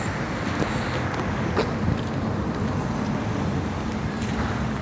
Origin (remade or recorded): recorded